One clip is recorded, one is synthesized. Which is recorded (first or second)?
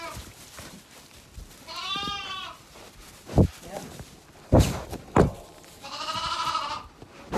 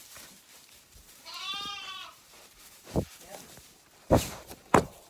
first